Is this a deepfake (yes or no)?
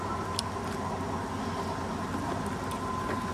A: no